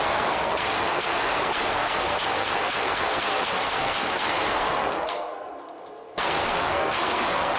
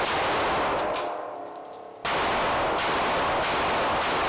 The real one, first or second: second